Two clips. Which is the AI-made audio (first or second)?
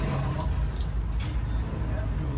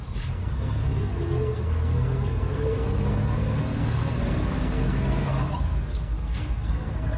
second